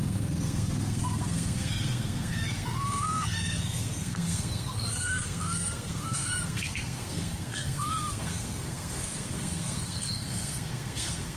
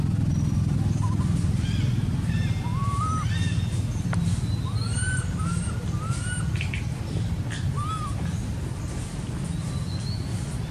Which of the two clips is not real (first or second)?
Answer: first